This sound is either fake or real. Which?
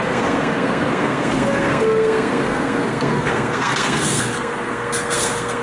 fake